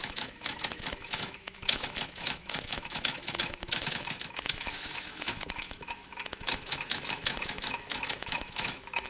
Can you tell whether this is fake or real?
fake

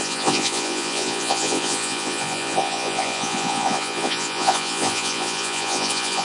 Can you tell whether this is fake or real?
fake